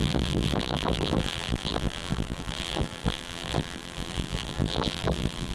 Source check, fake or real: fake